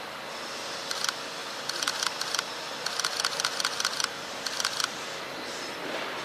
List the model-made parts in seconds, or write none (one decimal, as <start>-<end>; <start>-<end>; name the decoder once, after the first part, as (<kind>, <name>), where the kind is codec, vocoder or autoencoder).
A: none